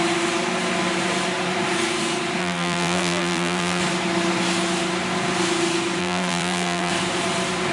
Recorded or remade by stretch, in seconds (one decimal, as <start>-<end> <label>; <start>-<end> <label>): 0.0-2.4 recorded; 2.4-3.8 remade; 3.8-6.0 recorded; 6.0-6.9 remade; 6.9-7.7 recorded